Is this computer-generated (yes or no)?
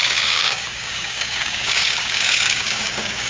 yes